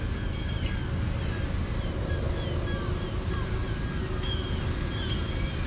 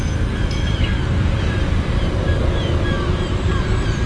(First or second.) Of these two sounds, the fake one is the second